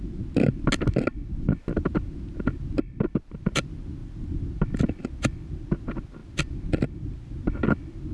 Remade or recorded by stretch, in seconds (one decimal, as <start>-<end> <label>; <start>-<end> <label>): 0.0-8.1 recorded